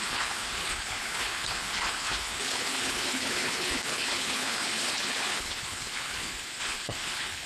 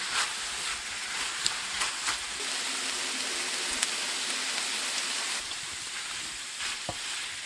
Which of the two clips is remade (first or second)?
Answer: first